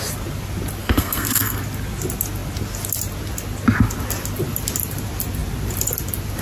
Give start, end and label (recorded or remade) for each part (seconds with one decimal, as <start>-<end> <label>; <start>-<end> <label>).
0.0-0.8 recorded; 0.8-1.6 remade; 1.6-6.4 recorded